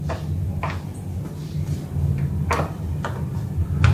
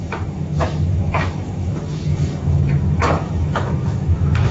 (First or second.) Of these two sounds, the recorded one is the first